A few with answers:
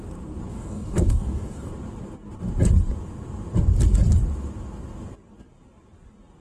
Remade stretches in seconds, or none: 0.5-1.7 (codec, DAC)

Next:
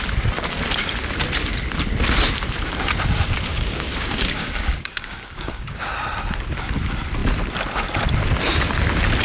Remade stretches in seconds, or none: 3.5-5.9 (codec, DAC)

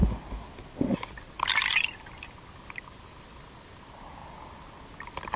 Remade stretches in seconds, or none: none